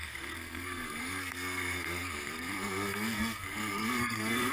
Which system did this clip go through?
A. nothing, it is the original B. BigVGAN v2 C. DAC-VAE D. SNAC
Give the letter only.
D